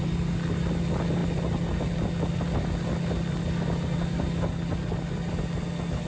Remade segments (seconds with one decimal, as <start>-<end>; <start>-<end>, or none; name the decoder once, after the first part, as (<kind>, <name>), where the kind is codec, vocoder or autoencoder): none